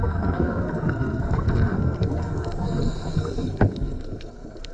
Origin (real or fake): fake